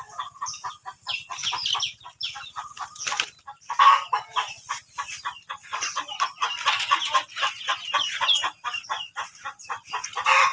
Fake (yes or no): yes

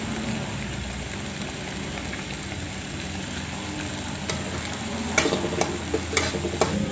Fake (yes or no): no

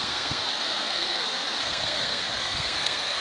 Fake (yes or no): yes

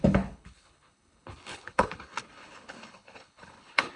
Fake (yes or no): yes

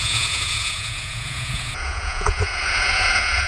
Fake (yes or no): yes